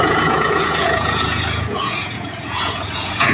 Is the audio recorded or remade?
remade